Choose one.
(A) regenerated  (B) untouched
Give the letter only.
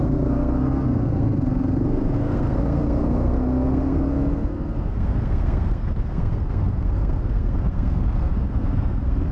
A